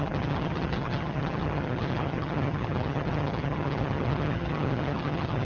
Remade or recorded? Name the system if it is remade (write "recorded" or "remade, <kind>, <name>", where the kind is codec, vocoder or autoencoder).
remade, vocoder, HiFi-GAN